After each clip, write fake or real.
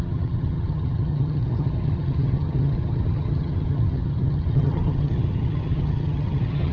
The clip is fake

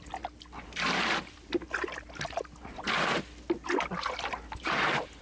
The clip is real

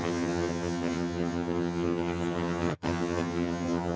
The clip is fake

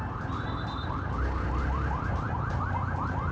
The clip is real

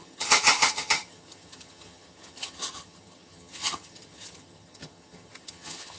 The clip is fake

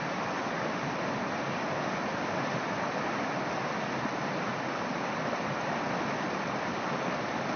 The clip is real